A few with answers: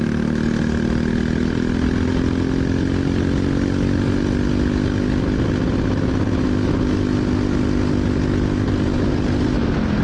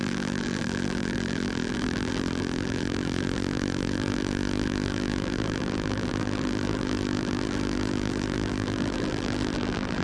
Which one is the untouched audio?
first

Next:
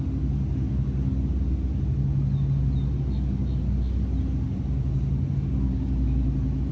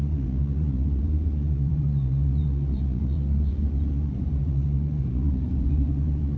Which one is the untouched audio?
first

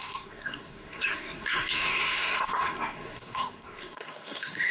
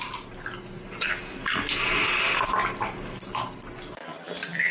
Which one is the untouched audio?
second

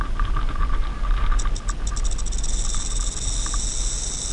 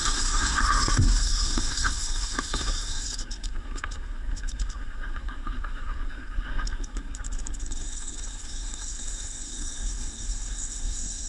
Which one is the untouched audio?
first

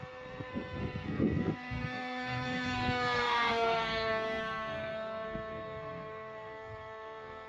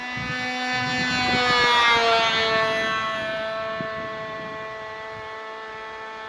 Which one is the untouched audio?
second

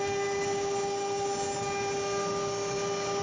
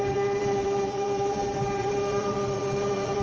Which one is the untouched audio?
first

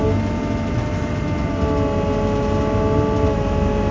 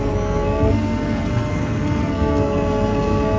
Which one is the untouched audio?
first